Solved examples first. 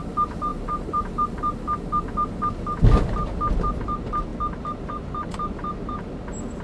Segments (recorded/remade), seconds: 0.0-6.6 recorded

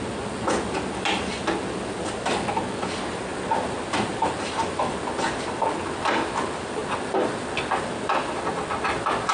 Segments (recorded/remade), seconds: 0.0-9.3 recorded

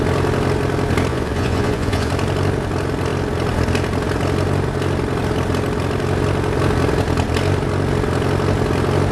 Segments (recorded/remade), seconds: 0.0-1.1 recorded; 1.1-2.1 remade; 2.1-9.1 recorded

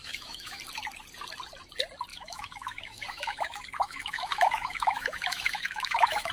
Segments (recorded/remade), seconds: 0.0-0.6 remade; 0.6-2.1 recorded; 2.1-6.3 remade

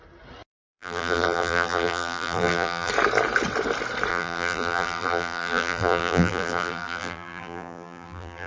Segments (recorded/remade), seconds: 0.0-0.5 recorded; 0.5-2.9 remade; 2.9-4.1 recorded; 4.1-8.5 remade